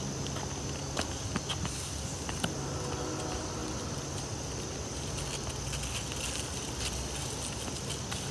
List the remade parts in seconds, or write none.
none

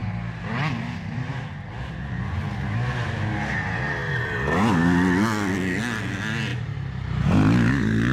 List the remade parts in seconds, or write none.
none

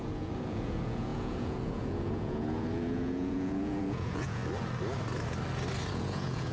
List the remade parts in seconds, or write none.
0.0-4.4 (vocoder, Vocos); 5.9-6.5

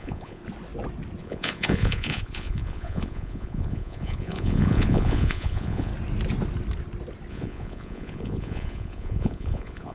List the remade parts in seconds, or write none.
0.0-0.4 (vocoder, Vocos); 1.2-5.9; 7.3-9.9

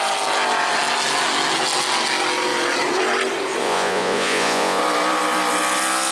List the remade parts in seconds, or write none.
3.6-4.8 (vocoder, Vocos)

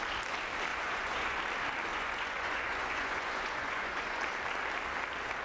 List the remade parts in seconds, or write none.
0.7-1.4 (vocoder, Vocos); 1.9-4.2